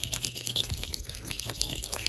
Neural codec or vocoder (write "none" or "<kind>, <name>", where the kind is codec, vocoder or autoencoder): codec, SNAC